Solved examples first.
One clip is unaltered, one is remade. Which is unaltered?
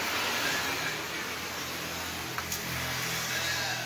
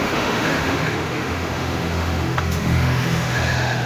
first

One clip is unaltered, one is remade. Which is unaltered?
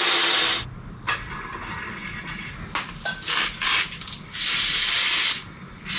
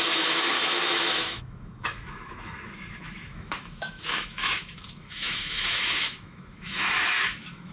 first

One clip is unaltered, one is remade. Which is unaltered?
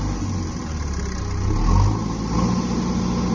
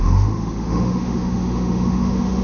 first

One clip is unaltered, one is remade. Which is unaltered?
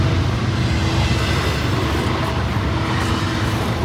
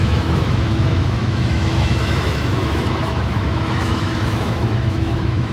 first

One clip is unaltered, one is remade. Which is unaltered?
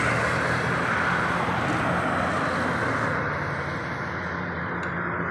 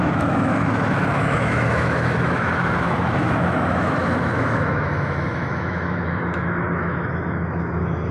first